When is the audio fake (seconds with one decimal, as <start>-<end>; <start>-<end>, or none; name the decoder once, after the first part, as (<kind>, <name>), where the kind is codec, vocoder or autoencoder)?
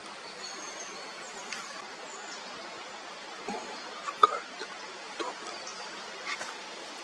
none